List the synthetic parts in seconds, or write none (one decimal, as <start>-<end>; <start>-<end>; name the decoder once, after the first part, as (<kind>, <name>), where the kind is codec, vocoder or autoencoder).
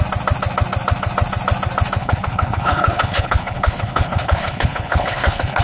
2.0-5.6 (codec, HILCodec)